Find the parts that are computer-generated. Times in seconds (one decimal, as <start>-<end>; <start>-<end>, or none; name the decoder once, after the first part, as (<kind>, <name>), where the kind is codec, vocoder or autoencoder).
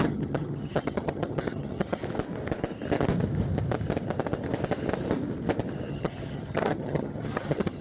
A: 0.0-2.0 (vocoder, HiFi-GAN); 5.9-7.8